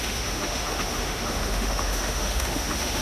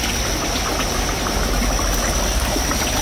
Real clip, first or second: second